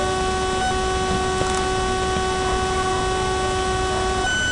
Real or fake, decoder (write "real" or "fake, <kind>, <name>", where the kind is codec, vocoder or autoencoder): real